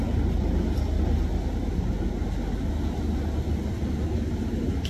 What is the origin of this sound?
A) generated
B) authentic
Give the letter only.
B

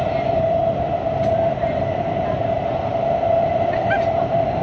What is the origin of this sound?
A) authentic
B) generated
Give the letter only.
B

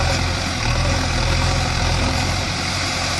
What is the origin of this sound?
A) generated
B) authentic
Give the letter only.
A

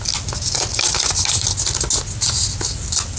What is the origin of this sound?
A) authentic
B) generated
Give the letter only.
A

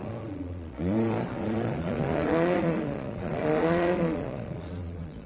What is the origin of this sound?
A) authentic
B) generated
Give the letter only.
B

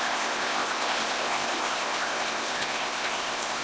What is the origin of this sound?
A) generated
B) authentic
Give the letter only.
A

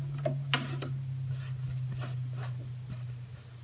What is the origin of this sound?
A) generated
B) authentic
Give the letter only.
B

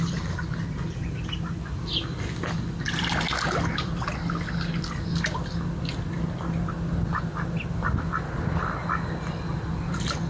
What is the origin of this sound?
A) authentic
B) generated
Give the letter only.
A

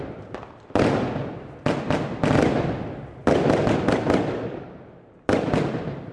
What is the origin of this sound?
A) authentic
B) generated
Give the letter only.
A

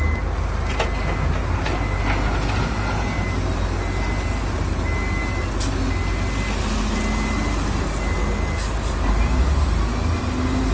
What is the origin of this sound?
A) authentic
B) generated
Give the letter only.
A